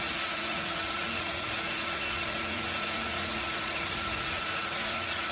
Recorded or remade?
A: remade